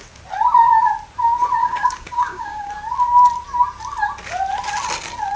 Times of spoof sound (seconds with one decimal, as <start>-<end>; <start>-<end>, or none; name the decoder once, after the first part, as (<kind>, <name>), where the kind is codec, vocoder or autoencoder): 1.6-2.7 (codec, DAC)